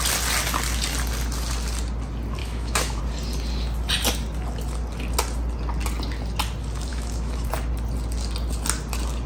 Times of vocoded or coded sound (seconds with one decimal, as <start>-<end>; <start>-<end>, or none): 2.4-3.0; 6.9-7.5